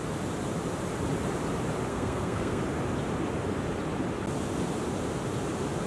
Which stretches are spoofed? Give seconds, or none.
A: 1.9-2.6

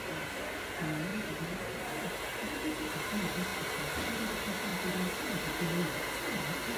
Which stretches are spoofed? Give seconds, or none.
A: none

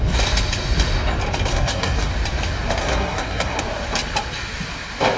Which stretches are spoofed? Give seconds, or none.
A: 1.5-2.1; 2.8-3.6

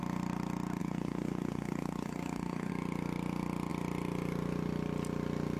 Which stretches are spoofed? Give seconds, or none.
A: 0.8-2.7